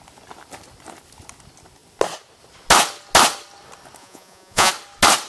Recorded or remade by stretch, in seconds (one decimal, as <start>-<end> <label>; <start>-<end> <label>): 0.0-4.0 recorded; 4.0-4.7 remade; 4.7-5.3 recorded